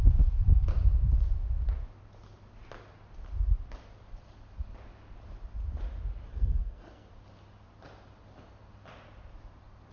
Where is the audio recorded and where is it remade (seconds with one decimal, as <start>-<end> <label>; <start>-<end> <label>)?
0.0-6.3 recorded; 6.3-7.1 remade; 7.1-9.9 recorded